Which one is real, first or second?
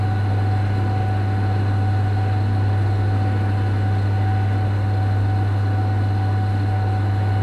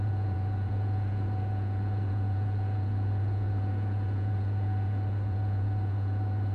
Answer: first